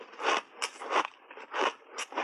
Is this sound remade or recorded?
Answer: recorded